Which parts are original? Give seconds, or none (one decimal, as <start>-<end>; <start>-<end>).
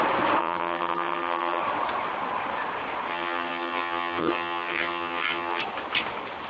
0.0-0.4; 1.6-3.1; 5.6-6.5